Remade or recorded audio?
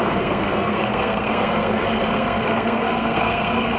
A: remade